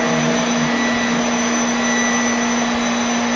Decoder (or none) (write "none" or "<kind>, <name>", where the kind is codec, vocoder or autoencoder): none